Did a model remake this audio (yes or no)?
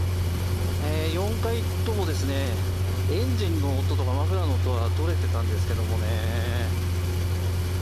no